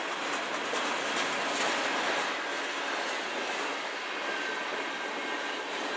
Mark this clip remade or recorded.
recorded